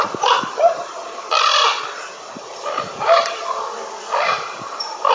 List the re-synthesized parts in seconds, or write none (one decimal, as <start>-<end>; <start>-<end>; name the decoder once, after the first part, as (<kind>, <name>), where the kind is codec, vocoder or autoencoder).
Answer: none

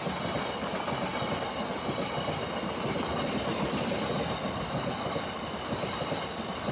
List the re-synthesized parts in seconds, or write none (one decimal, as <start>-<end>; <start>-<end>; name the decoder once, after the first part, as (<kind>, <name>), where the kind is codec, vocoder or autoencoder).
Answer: 0.0-1.1 (vocoder, BigVGAN v2); 5.1-6.7

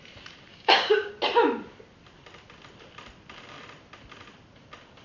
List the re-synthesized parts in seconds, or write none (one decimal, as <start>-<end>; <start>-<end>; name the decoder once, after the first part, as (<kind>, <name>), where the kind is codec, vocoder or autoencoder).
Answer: 0.5-1.1 (codec, DAC)